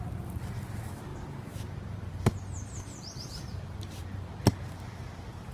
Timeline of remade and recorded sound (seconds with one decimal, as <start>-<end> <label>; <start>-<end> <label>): 0.0-1.1 recorded; 1.1-4.4 remade; 4.4-5.5 recorded

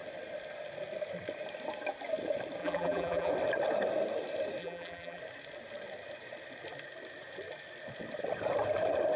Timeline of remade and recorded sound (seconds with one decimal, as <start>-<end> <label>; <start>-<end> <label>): 0.0-2.6 recorded; 2.6-3.3 remade; 3.3-4.6 recorded; 4.6-5.2 remade; 5.2-9.2 recorded

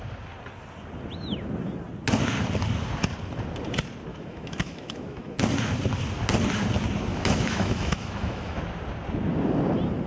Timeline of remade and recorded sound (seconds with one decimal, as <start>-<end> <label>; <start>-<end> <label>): 0.0-4.1 recorded; 4.1-5.4 remade; 5.4-7.1 recorded; 7.1-8.6 remade; 8.6-10.1 recorded

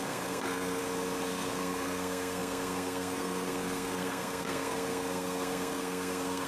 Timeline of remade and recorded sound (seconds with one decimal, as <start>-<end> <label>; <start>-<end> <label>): 0.0-0.8 remade; 0.8-1.3 recorded; 1.3-6.5 remade